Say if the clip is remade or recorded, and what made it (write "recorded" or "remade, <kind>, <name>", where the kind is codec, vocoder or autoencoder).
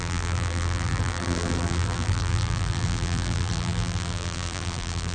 remade, vocoder, BigVGAN v2